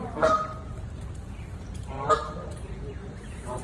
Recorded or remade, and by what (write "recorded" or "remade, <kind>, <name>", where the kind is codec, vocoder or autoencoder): remade, vocoder, BigVGAN v2